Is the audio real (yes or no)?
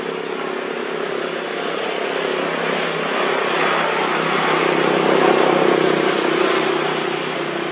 yes